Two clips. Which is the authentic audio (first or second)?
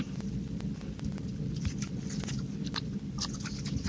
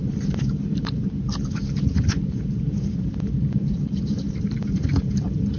first